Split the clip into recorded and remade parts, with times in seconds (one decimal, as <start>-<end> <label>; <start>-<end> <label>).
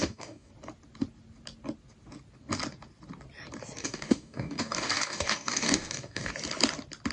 0.0-0.5 remade; 0.5-3.8 recorded; 3.8-6.3 remade; 6.3-7.1 recorded